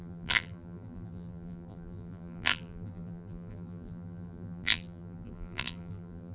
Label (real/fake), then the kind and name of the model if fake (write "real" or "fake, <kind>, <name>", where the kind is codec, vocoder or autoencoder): fake, vocoder, BigVGAN v2